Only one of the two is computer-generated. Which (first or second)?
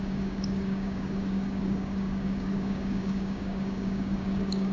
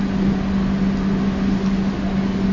first